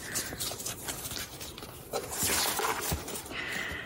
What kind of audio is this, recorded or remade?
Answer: remade